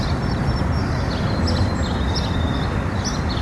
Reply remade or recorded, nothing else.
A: recorded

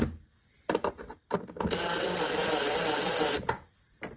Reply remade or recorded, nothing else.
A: recorded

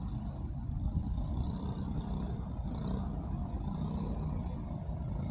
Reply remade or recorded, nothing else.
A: recorded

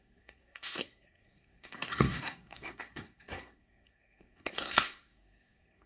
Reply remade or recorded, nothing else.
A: remade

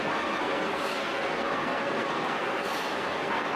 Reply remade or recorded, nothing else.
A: remade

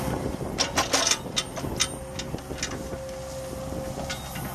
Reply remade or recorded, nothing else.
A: recorded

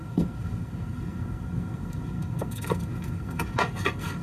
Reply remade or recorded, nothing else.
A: remade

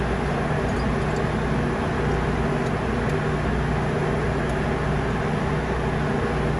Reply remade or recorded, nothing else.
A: recorded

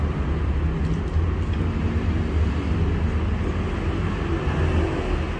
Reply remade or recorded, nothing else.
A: recorded